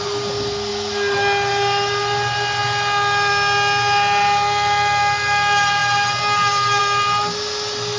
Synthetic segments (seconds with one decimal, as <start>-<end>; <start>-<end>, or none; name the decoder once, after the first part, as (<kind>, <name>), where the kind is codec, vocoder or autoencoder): none